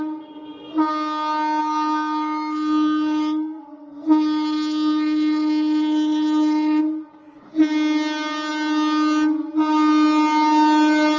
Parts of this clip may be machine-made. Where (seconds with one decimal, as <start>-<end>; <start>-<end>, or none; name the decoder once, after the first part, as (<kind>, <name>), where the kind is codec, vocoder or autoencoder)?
1.6-6.8 (codec, SNAC)